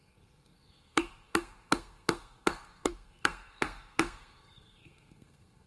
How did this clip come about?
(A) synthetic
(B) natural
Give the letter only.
A